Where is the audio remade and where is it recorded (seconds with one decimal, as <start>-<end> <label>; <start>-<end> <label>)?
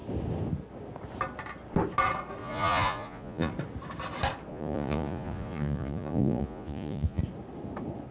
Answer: 0.0-2.4 recorded; 2.4-3.5 remade; 3.5-4.5 recorded; 4.5-7.2 remade; 7.2-8.1 recorded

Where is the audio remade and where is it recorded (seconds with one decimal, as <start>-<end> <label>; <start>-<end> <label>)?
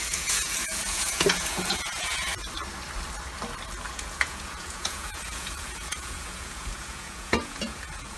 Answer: 0.0-2.3 remade; 2.3-3.9 recorded; 3.9-8.2 remade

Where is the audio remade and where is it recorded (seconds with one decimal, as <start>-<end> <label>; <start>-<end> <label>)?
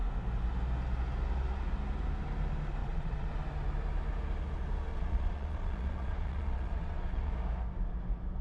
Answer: 0.0-2.8 recorded; 2.8-3.3 remade; 3.3-4.9 recorded; 4.9-7.3 remade; 7.3-8.4 recorded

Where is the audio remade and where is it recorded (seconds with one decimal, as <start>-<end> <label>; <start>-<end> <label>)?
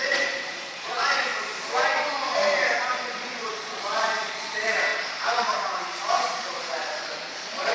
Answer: 0.0-1.3 remade; 1.3-2.8 recorded; 2.8-7.7 remade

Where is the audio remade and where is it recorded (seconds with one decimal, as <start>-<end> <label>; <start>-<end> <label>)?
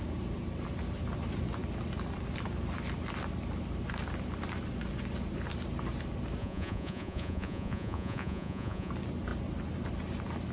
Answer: 0.0-6.4 recorded; 6.4-8.9 remade; 8.9-10.5 recorded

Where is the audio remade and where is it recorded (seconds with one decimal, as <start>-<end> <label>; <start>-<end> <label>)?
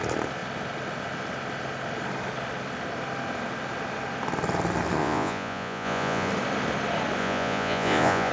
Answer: 0.0-5.0 recorded; 5.0-6.3 remade; 6.3-7.2 recorded; 7.2-8.3 remade